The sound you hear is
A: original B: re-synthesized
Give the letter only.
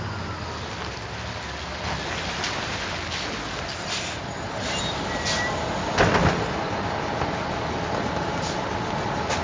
A